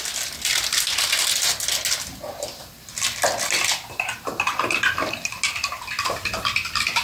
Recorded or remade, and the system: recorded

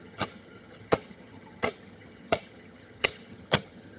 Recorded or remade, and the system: remade, vocoder, HiFi-GAN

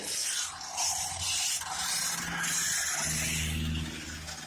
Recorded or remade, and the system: recorded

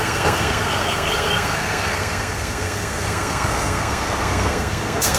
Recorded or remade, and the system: remade, codec, SNAC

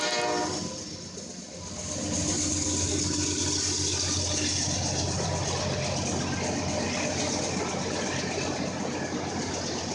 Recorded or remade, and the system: recorded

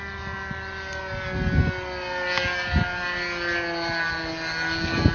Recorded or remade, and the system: recorded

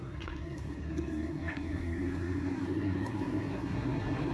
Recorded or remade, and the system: remade, codec, SNAC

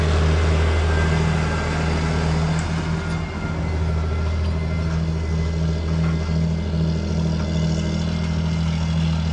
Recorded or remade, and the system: recorded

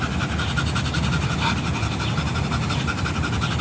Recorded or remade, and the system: recorded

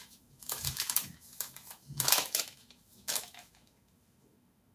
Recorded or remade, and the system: remade, autoencoder, DAC-VAE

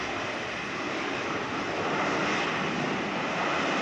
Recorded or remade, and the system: recorded